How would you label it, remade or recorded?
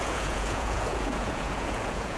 remade